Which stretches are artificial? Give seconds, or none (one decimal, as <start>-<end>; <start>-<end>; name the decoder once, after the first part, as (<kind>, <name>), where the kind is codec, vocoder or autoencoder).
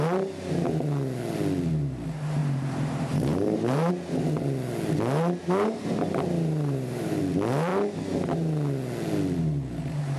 2.4-3.9 (vocoder, BigVGAN v2); 5.4-7.2